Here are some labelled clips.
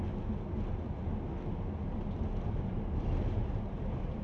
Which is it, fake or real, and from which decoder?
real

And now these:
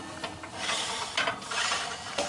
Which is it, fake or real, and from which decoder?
real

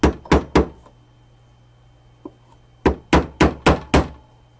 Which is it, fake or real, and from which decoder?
real